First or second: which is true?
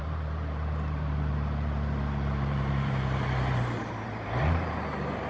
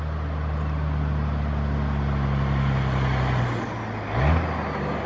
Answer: second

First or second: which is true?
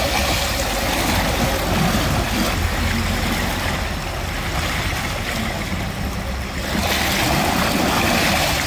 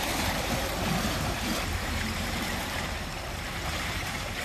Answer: first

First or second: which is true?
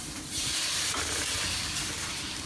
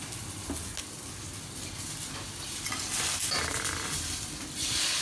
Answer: second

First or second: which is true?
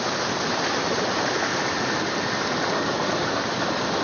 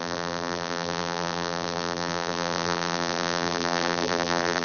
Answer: first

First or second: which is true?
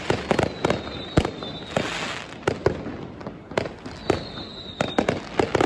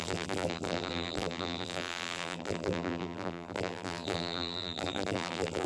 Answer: first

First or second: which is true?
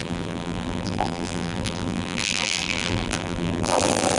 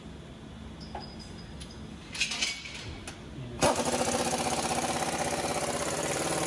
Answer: second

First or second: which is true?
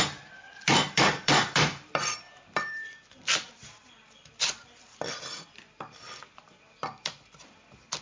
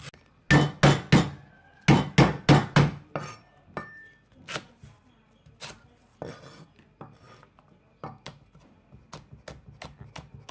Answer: second